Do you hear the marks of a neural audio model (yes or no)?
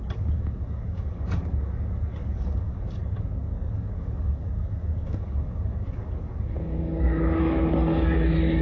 yes